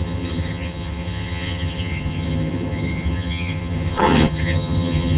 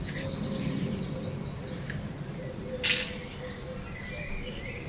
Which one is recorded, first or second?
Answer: second